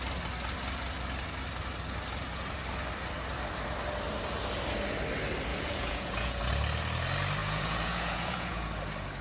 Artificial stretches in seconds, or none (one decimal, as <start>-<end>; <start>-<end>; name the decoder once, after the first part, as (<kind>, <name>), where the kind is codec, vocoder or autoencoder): 5.5-6.5 (vocoder, Vocos); 7.4-8.7